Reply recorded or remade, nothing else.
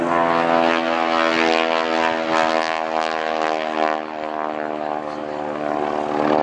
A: recorded